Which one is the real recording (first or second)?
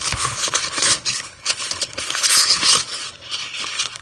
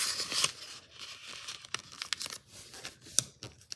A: second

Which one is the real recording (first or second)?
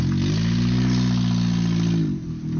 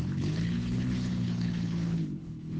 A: first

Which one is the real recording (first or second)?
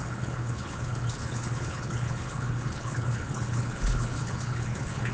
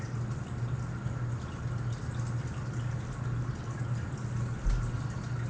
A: second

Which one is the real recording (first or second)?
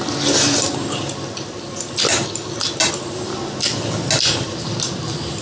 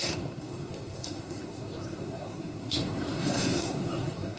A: first